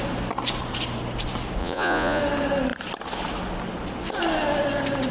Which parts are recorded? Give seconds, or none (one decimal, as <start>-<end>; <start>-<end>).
0.0-1.6; 2.2-5.1

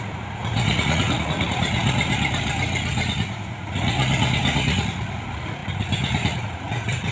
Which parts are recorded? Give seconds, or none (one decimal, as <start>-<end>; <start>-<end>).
none

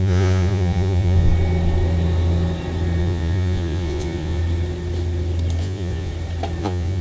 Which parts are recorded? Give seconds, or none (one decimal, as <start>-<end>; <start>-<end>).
1.3-3.0; 4.4-5.6; 6.1-6.6

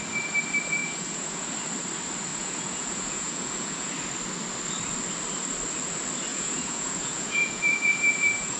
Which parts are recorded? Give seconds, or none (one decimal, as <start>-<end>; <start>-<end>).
0.0-0.8; 1.5-2.3; 3.9-6.3

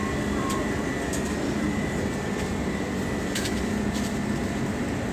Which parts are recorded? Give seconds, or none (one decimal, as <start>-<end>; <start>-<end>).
0.0-5.1